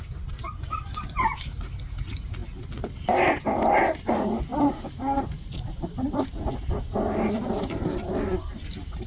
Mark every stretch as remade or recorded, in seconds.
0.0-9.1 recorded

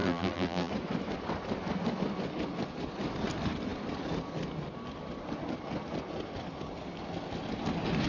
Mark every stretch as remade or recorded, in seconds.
0.0-0.7 remade; 0.7-8.1 recorded

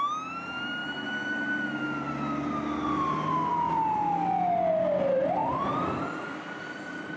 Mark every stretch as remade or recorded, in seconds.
0.0-5.4 recorded; 5.4-7.2 remade

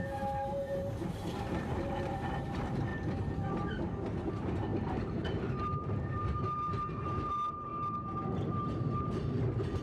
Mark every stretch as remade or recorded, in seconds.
0.0-2.9 remade; 2.9-4.3 recorded; 4.3-7.7 remade; 7.7-8.5 recorded; 8.5-9.8 remade